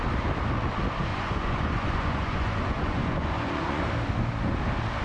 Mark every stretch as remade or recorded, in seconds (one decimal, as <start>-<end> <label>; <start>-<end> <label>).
0.0-1.1 recorded; 1.1-3.8 remade; 3.8-5.0 recorded